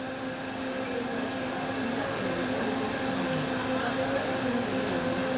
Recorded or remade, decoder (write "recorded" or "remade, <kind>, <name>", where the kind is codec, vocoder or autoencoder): recorded